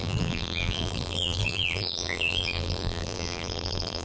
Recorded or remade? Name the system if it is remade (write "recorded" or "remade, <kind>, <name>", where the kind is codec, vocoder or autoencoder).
remade, vocoder, BigVGAN v2